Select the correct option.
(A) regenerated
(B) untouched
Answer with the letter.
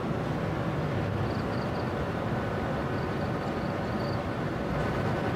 B